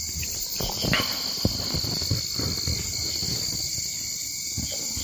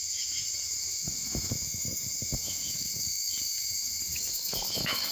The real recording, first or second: first